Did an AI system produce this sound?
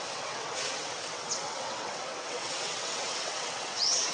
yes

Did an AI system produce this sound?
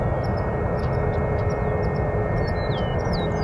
no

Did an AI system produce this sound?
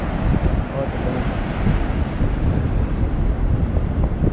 no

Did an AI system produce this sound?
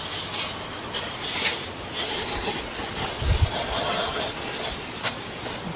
no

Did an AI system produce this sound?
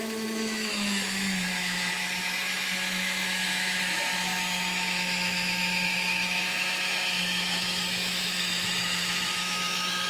yes